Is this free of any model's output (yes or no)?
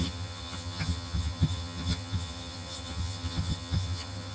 no